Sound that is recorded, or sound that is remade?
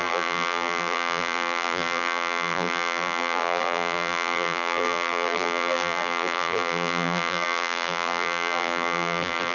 remade